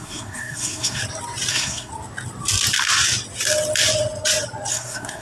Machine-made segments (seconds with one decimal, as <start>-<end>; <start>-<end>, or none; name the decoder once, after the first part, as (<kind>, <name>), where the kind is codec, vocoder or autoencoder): 0.0-1.0 (codec, SNAC); 1.5-1.9; 4.7-5.2